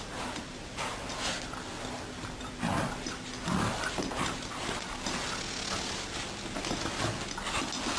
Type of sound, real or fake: real